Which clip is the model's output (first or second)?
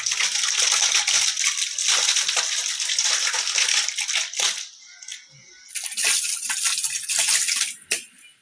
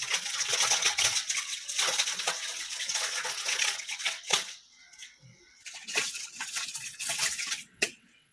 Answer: second